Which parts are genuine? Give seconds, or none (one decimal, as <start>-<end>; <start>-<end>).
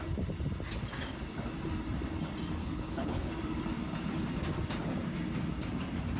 0.0-2.6; 3.3-6.2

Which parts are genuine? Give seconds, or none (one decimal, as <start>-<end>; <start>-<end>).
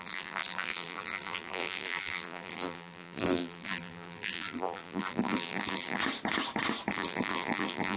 6.0-6.9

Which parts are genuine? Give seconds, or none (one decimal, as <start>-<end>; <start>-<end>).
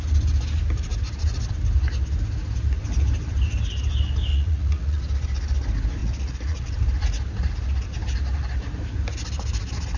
0.0-4.3; 5.0-6.0; 6.8-10.0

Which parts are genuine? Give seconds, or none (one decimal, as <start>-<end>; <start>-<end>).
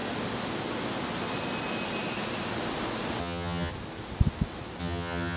0.0-3.2; 3.7-4.8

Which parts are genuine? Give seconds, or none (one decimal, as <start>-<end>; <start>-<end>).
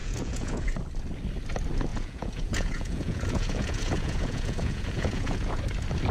0.6-1.9; 5.6-6.1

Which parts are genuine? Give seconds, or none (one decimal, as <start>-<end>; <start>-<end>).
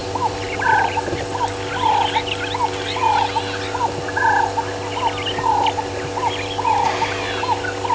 1.2-7.9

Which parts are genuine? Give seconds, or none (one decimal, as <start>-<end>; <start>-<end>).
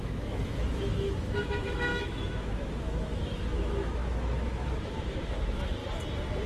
5.8-6.5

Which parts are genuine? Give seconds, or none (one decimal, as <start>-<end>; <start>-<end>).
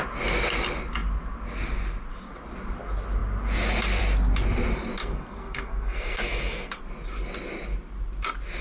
0.0-5.0; 6.8-8.6